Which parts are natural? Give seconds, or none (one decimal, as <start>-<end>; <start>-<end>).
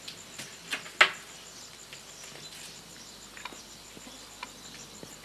0.0-5.2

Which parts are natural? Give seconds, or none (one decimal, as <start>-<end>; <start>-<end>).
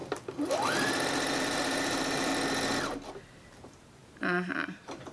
0.0-1.4; 2.3-3.1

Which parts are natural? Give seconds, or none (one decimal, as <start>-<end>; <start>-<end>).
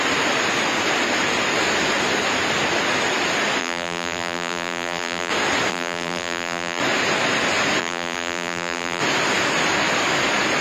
0.0-3.6; 5.3-5.7; 6.8-7.8; 9.0-10.6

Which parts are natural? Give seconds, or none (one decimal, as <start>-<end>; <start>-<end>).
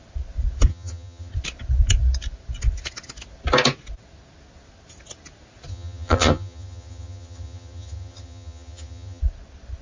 0.0-0.7; 1.3-5.7; 9.2-9.8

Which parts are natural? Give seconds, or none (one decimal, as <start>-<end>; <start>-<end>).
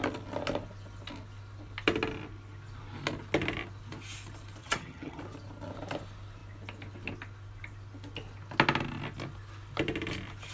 0.0-4.6; 5.2-10.5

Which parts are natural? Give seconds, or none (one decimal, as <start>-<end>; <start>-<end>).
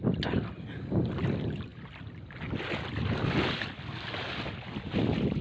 0.0-5.4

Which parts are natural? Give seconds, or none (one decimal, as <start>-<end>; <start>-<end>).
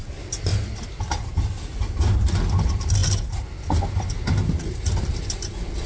0.0-5.9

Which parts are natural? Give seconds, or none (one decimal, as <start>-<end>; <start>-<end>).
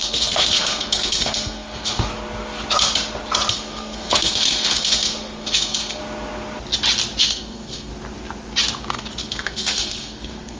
2.1-3.5; 6.0-7.2; 7.9-8.9